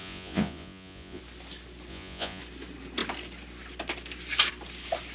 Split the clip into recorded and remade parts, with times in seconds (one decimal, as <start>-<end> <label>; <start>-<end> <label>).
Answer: 0.0-1.2 remade; 1.2-1.9 recorded; 1.9-2.4 remade; 2.4-5.1 recorded

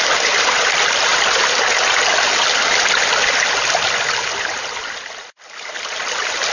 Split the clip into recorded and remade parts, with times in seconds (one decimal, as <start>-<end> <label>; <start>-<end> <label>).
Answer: 0.0-6.5 recorded

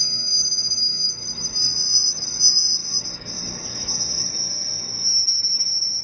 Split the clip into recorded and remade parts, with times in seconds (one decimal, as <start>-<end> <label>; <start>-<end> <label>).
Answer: 0.0-6.0 remade

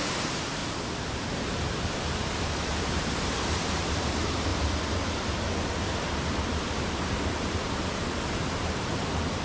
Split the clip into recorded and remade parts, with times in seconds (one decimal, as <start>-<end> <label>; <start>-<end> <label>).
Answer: 0.0-0.6 remade; 0.6-1.1 recorded; 1.1-4.5 remade; 4.5-6.6 recorded; 6.6-8.0 remade; 8.0-8.6 recorded; 8.6-9.4 remade